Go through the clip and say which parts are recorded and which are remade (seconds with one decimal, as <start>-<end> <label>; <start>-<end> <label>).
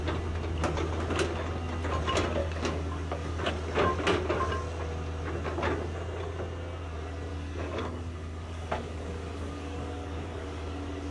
0.0-2.4 recorded; 2.4-3.5 remade; 3.5-7.3 recorded; 7.3-11.1 remade